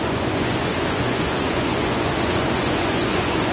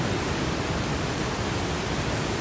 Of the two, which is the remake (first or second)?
first